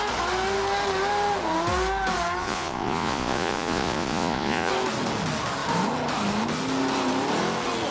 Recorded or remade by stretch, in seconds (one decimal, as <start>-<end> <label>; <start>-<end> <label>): 0.0-2.4 recorded; 2.4-4.7 remade; 4.7-7.9 recorded